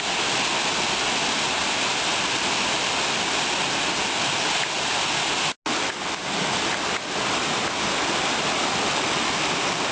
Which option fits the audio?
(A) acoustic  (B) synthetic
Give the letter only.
A